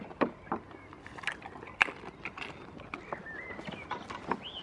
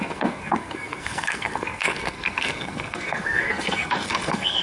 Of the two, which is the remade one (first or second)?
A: second